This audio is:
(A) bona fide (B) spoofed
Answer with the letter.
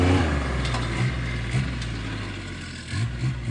A